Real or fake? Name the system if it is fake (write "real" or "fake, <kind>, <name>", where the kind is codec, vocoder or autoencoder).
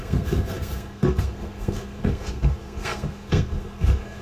fake, codec, SNAC